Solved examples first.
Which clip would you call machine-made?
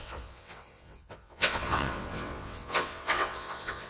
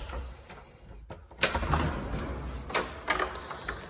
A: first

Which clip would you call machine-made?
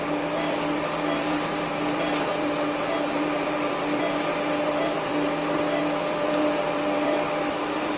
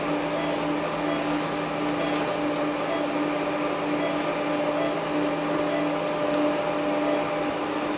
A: first